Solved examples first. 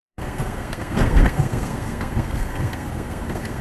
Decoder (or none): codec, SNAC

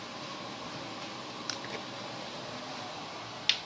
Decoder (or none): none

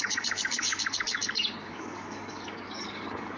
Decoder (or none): codec, DAC